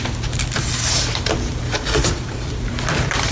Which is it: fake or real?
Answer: fake